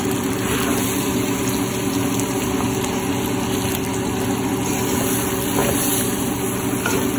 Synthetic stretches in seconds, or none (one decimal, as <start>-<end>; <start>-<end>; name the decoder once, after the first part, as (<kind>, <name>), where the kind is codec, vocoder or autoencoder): 5.6-6.3 (vocoder, BigVGAN v2)